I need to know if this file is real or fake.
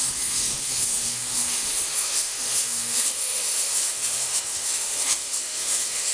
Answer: fake